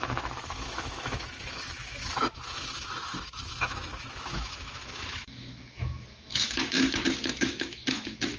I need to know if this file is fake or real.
fake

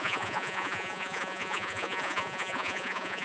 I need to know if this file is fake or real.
fake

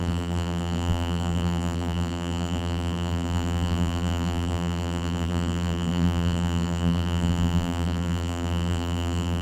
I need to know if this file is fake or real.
fake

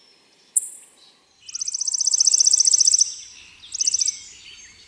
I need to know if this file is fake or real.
real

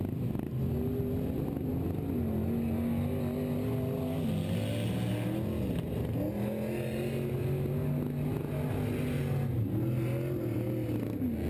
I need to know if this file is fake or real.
real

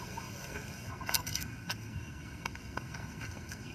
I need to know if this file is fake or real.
fake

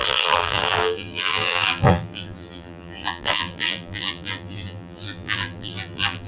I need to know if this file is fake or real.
fake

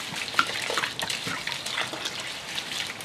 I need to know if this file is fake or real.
real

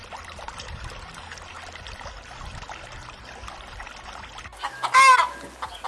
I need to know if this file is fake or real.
real